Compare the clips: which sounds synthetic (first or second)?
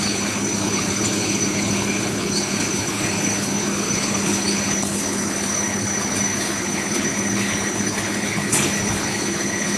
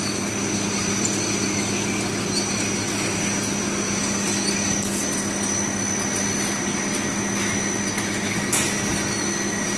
first